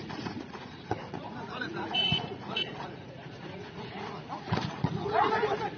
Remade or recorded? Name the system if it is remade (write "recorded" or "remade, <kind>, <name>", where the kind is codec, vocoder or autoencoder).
remade, vocoder, Vocos